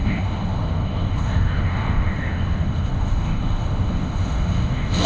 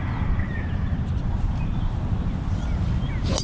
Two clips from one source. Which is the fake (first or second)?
first